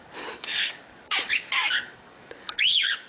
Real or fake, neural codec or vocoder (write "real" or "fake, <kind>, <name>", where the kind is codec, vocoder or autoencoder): fake, codec, DAC